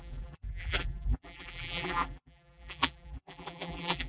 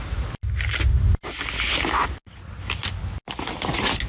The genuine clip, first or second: second